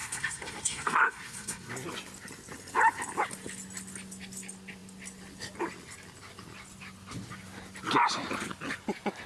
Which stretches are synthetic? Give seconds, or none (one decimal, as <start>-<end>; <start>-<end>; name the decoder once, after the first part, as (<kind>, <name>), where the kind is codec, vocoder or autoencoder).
0.0-1.7 (codec, SNAC)